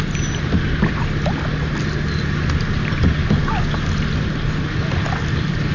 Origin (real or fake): real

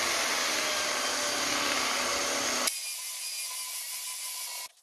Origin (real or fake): real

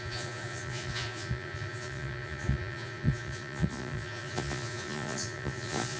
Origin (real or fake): fake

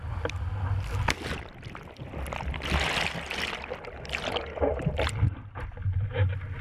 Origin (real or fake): real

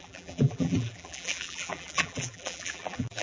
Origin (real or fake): fake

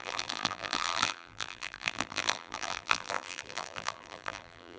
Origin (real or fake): fake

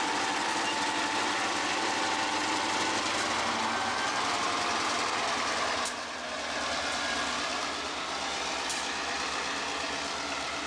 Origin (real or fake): real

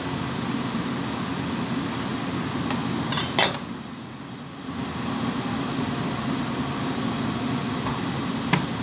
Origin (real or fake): real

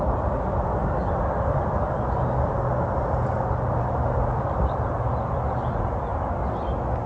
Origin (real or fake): real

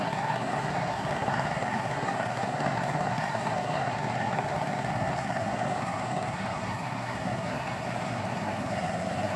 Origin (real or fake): fake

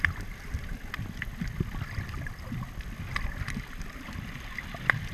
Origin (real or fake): real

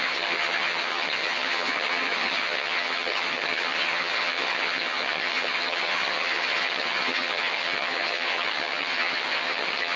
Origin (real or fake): fake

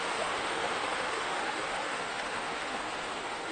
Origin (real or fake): fake